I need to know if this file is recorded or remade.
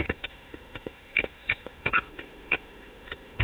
remade